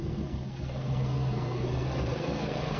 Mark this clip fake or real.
fake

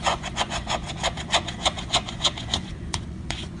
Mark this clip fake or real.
fake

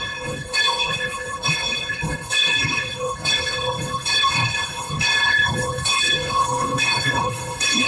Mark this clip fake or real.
fake